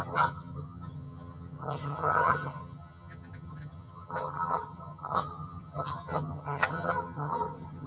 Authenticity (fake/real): fake